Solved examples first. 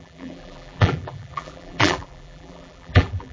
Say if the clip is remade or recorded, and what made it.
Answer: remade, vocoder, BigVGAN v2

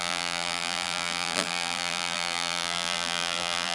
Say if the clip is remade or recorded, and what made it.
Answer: remade, vocoder, BigVGAN v2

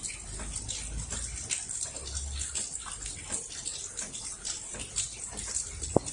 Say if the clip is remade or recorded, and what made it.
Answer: recorded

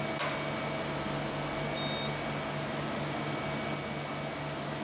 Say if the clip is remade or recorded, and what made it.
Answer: recorded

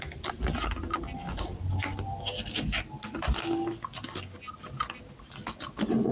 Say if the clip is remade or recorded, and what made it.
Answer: recorded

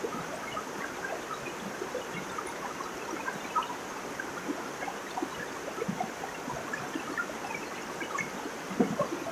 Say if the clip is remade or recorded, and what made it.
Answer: recorded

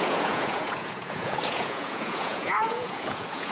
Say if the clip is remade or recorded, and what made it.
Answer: remade, vocoder, Vocos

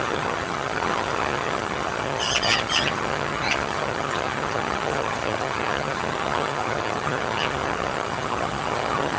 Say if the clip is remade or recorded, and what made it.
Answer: remade, vocoder, HiFi-GAN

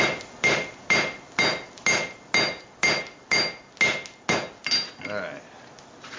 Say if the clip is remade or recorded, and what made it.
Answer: recorded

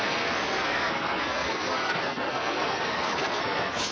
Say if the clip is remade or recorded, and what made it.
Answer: remade, codec, SNAC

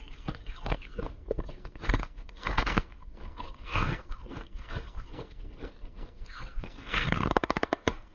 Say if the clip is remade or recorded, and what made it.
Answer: remade, codec, SNAC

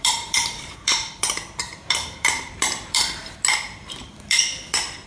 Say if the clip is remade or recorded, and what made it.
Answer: remade, vocoder, BigVGAN v2